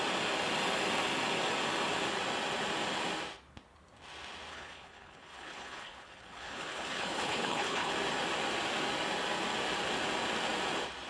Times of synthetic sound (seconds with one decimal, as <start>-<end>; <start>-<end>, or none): 4.5-7.9